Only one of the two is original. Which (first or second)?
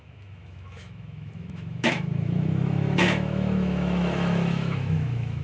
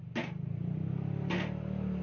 second